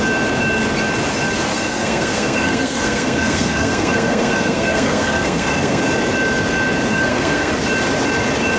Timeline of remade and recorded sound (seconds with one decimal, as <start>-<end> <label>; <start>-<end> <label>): 0.0-1.5 recorded; 1.5-5.8 remade; 5.8-6.9 recorded; 6.9-7.5 remade; 7.5-8.6 recorded